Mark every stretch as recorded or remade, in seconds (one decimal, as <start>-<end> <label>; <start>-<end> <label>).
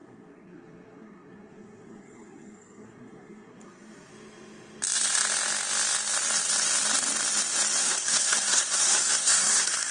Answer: 0.0-4.1 remade; 4.1-7.8 recorded; 7.8-9.9 remade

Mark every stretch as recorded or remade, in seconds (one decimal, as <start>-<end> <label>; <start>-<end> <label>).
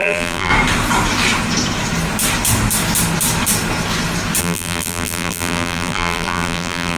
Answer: 0.0-0.5 remade; 0.5-4.4 recorded; 4.4-7.0 remade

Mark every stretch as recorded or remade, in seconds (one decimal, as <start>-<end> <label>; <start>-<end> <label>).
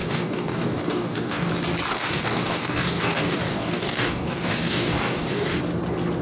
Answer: 0.0-1.5 remade; 1.5-1.9 recorded; 1.9-5.6 remade; 5.6-6.2 recorded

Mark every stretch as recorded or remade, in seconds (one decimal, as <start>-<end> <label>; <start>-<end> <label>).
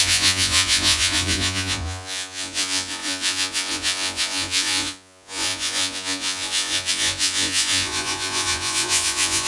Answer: 0.0-9.5 remade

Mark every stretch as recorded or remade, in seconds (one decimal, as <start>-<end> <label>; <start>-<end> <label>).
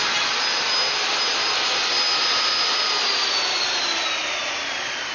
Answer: 0.0-5.1 recorded